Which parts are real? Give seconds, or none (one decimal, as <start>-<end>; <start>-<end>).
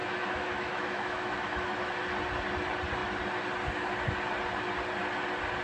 1.9-5.6